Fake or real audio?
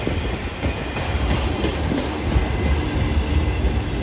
real